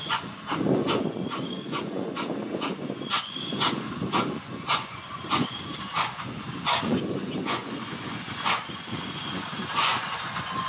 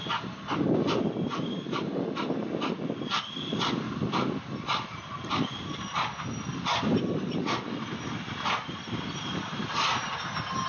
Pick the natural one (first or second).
second